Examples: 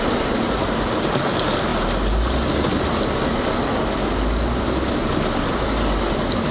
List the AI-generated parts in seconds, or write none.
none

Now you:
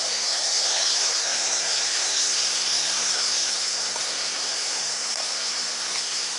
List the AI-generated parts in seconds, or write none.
0.0-6.4 (codec, SNAC)

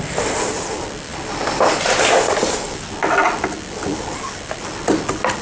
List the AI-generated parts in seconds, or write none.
0.0-5.4 (vocoder, BigVGAN v2)

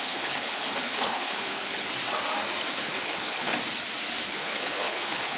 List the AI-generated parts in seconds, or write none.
0.0-1.9 (codec, HILCodec); 2.7-3.5; 4.3-5.4

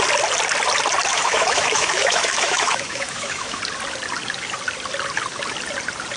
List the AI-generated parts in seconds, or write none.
1.1-3.6 (autoencoder, DAC-VAE)

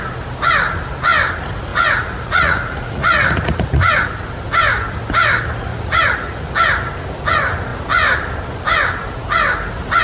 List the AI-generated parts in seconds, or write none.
1.7-4.1 (vocoder, Vocos); 5.7-6.5

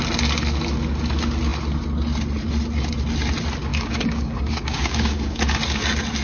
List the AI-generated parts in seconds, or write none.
3.7-5.4 (codec, DAC)